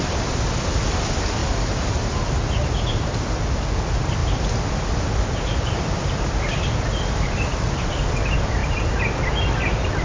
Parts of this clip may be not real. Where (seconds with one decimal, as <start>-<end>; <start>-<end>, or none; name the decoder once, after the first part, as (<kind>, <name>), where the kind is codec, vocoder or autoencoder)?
none